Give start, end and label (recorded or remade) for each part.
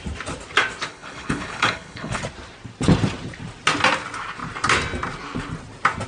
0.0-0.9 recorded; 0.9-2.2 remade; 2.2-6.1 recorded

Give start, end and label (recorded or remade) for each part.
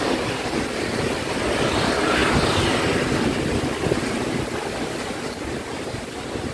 0.0-6.5 recorded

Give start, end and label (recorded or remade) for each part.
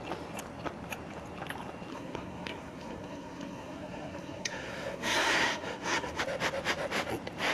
0.0-1.9 recorded; 1.9-6.2 remade; 6.2-7.5 recorded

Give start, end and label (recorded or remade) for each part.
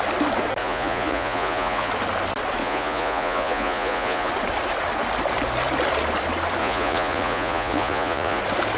0.0-0.6 recorded; 0.6-1.9 remade; 1.9-2.6 recorded; 2.6-4.3 remade; 4.3-6.6 recorded; 6.6-8.4 remade; 8.4-8.8 recorded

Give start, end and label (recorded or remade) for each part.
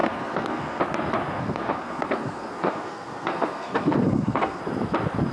0.0-0.8 remade; 0.8-1.4 recorded; 1.4-4.6 remade; 4.6-5.3 recorded